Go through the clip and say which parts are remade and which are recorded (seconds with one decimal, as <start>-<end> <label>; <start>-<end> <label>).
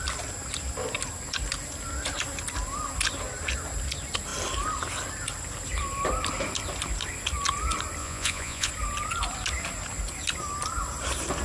0.0-8.0 recorded; 8.0-8.7 remade; 8.7-11.4 recorded